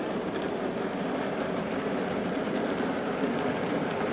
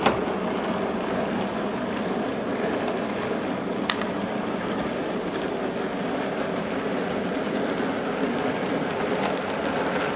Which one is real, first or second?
second